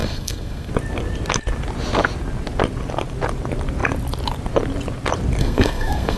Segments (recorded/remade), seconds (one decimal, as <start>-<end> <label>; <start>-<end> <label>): 0.0-0.7 remade; 0.7-5.4 recorded; 5.4-6.2 remade